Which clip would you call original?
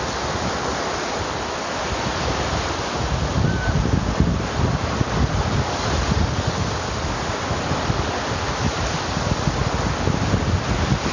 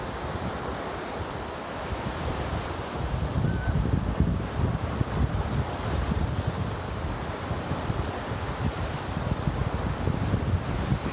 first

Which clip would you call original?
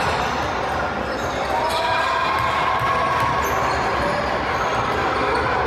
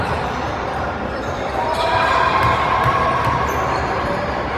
first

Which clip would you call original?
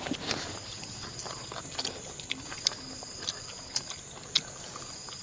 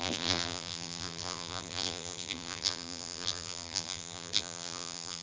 first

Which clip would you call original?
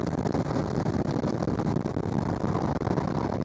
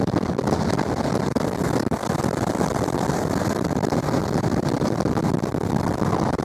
first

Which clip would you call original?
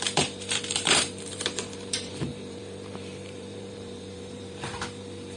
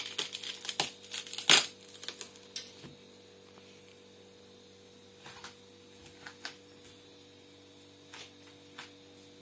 second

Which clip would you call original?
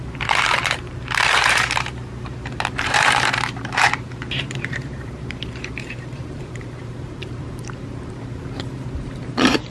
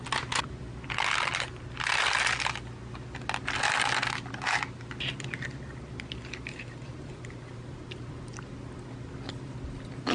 second